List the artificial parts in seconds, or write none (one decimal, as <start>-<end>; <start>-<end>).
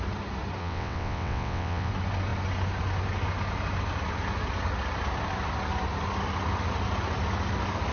0.6-1.9